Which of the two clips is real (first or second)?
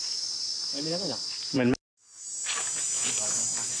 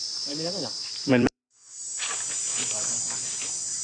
first